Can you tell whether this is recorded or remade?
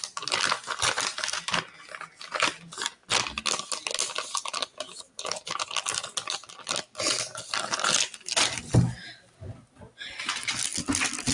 recorded